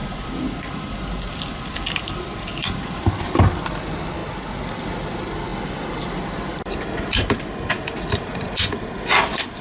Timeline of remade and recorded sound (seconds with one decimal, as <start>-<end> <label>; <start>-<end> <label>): 0.0-9.6 recorded